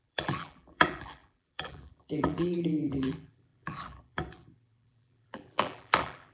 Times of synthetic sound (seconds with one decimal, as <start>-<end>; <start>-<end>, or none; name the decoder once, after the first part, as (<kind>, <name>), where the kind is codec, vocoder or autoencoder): 0.0-6.3 (vocoder, BigVGAN v2)